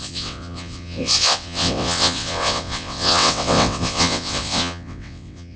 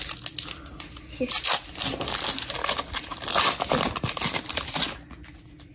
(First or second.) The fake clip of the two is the first